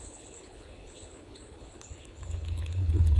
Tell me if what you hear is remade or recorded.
remade